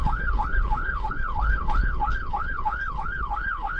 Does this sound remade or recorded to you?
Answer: remade